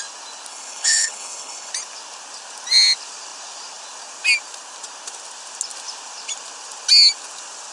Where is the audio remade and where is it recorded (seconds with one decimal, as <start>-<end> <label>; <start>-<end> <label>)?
0.0-0.5 recorded; 0.5-1.7 remade; 1.7-7.7 recorded